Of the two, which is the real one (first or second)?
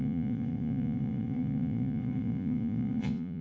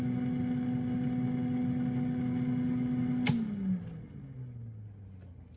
second